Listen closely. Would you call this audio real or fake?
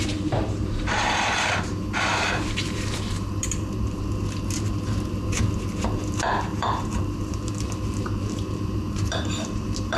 fake